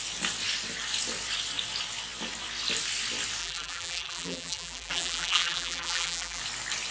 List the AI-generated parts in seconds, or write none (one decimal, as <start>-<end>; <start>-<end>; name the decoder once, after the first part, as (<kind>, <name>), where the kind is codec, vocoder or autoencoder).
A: 3.4-6.4 (vocoder, BigVGAN v2)